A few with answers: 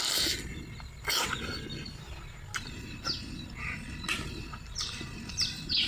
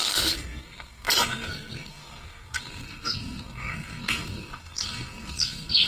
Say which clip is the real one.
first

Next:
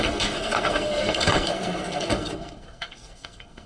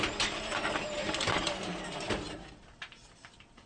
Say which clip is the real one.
second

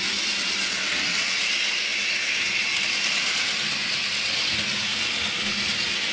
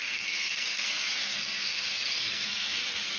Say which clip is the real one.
first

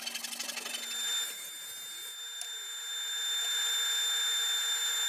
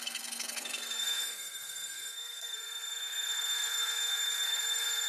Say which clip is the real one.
first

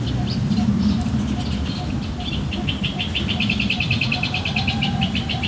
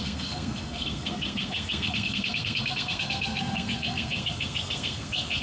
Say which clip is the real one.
first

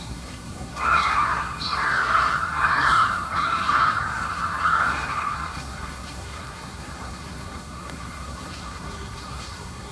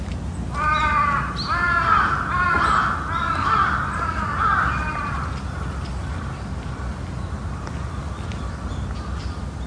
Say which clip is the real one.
second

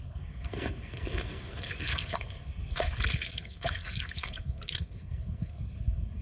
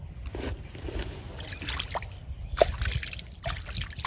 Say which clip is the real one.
second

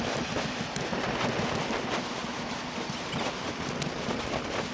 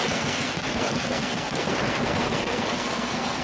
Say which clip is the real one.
first